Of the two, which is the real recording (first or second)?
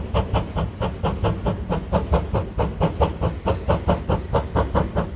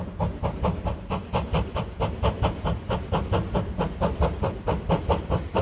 first